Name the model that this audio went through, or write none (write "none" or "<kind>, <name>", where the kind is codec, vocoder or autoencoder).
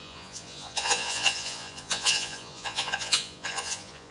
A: vocoder, Vocos